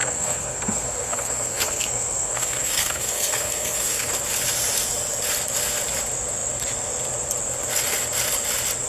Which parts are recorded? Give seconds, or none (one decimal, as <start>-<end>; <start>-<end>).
4.1-8.9